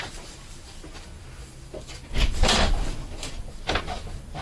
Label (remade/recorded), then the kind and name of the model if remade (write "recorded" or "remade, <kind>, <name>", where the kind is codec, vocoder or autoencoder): remade, vocoder, BigVGAN v2